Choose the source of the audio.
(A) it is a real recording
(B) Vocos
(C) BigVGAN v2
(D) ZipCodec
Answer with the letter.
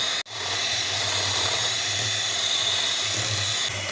A